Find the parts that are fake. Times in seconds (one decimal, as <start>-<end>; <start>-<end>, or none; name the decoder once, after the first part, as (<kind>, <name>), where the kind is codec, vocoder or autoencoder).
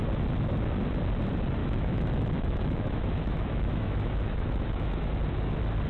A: 1.6-5.1 (autoencoder, DAC-VAE)